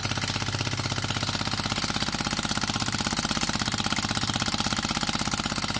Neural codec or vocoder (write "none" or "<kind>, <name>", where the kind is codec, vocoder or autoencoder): none